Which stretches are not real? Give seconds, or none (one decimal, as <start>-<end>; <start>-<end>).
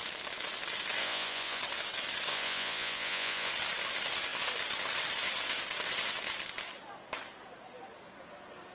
1.0-1.6; 2.3-3.5